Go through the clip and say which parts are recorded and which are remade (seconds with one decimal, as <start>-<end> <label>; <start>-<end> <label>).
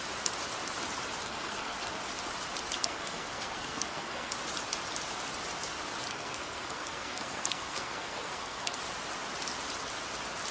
0.0-1.2 recorded; 1.2-2.0 remade; 2.0-2.8 recorded; 2.8-4.3 remade; 4.3-6.1 recorded; 6.1-8.8 remade; 8.8-10.5 recorded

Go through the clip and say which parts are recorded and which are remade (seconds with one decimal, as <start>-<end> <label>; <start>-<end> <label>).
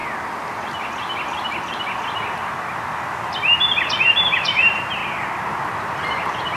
0.0-4.0 recorded; 4.0-5.0 remade; 5.0-5.8 recorded; 5.8-6.6 remade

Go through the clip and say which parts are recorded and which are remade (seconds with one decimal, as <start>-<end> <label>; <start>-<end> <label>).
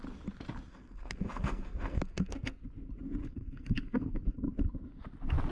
0.0-0.7 recorded; 0.7-2.6 remade; 2.6-3.2 recorded; 3.2-4.2 remade; 4.2-5.5 recorded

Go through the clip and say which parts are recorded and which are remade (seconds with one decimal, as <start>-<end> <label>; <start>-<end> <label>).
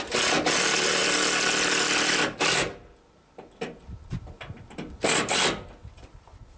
0.0-6.6 recorded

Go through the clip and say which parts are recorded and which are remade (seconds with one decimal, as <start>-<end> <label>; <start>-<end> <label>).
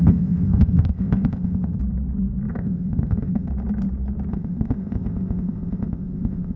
0.0-1.8 remade; 1.8-2.5 recorded; 2.5-3.5 remade; 3.5-4.3 recorded; 4.3-6.6 remade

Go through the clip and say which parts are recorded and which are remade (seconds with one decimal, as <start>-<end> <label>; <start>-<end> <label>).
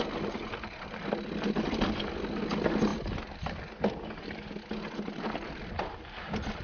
0.0-6.6 recorded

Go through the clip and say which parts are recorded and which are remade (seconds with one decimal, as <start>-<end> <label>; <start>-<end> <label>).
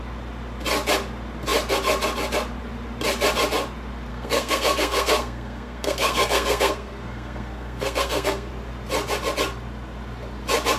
0.0-4.1 recorded; 4.1-8.5 remade; 8.5-10.8 recorded